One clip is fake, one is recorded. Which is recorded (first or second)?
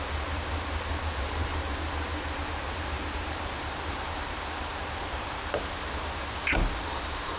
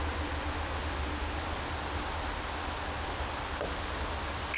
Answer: second